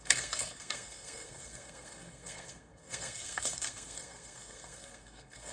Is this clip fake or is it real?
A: fake